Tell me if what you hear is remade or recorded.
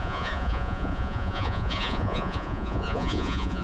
remade